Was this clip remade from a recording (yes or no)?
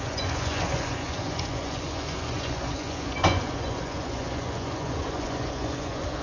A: yes